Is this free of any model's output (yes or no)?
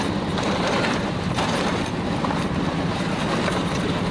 no